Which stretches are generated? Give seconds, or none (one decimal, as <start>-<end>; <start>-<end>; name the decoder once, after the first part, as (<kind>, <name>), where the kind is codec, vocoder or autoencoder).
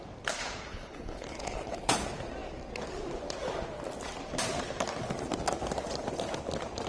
0.7-1.9 (codec, HILCodec)